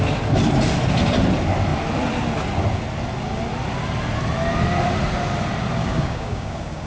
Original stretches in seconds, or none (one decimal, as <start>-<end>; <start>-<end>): 0.0-5.8

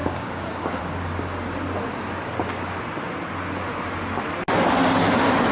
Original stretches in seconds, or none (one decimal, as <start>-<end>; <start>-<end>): 0.8-5.5

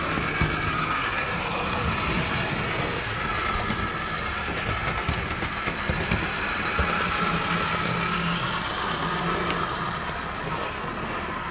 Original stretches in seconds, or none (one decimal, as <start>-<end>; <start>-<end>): 0.0-11.5

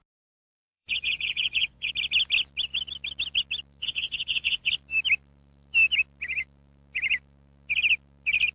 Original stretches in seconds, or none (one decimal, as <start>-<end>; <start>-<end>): 0.0-0.5; 1.9-3.8; 4.7-8.5

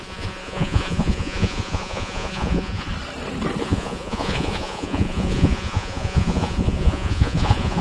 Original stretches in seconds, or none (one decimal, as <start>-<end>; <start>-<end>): 2.9-3.6

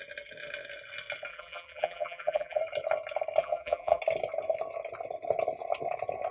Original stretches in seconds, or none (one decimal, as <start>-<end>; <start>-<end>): 0.0-1.3; 2.6-3.4; 4.0-6.3

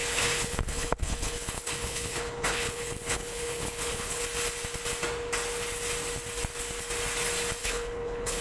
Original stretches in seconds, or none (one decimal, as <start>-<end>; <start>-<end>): 4.2-7.6

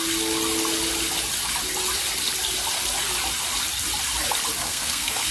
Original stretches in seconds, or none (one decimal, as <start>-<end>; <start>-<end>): 0.0-4.6